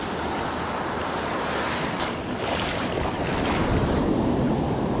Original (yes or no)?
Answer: yes